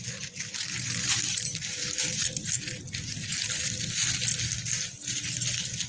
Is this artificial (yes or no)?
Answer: no